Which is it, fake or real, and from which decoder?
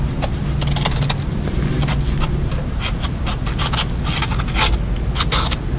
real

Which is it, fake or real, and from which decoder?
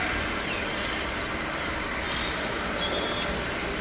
real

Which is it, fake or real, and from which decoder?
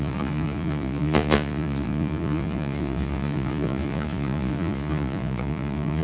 fake, vocoder, Vocos